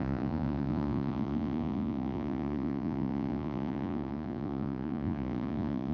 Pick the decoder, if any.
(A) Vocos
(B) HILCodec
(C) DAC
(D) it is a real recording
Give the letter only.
A